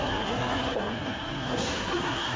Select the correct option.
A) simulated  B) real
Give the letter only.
A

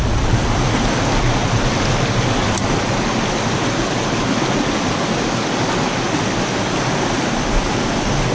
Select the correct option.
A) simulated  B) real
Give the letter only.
B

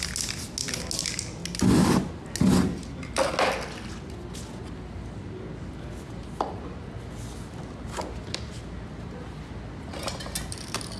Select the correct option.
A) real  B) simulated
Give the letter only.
A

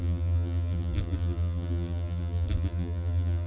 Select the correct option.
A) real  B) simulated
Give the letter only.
B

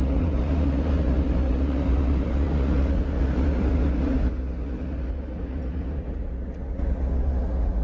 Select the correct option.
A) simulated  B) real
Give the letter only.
A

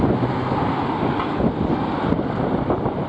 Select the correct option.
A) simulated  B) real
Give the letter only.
B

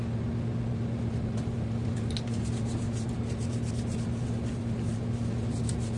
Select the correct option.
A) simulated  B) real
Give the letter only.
B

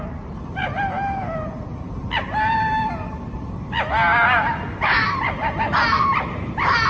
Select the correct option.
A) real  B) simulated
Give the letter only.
A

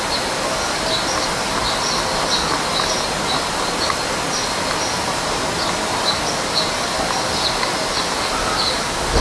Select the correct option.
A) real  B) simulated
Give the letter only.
A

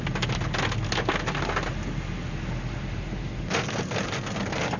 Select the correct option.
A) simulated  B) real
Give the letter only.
B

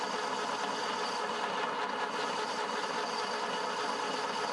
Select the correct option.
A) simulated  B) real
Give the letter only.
B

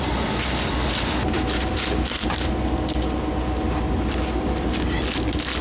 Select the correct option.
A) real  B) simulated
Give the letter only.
A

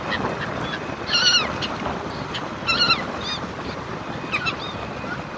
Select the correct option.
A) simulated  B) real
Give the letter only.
B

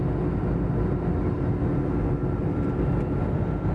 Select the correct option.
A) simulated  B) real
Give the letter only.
B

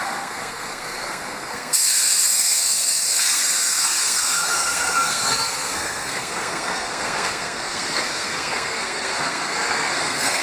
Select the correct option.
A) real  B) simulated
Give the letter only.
B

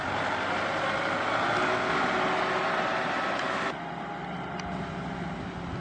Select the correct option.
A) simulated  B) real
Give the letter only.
B